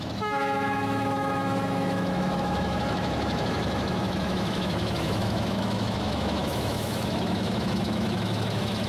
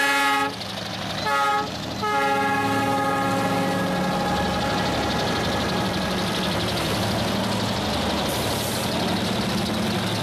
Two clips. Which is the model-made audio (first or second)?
first